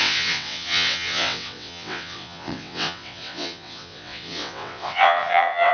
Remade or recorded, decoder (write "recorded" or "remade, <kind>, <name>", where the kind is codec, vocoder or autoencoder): remade, vocoder, WaveNeXt